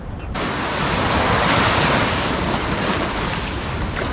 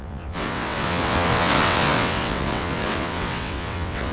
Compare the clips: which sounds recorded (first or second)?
first